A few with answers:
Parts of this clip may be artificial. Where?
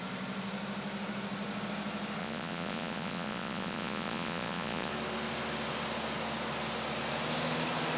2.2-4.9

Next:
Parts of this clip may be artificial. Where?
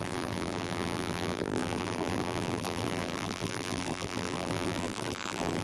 0.0-5.6